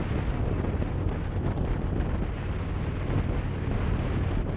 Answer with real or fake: real